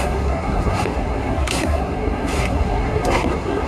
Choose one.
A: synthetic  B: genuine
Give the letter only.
A